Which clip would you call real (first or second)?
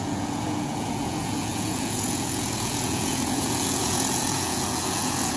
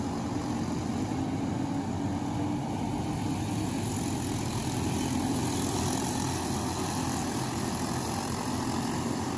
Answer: second